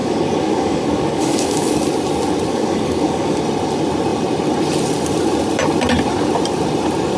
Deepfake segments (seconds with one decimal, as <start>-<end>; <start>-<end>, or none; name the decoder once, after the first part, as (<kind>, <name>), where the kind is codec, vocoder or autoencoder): 0.0-1.8 (codec, DAC); 2.5-3.4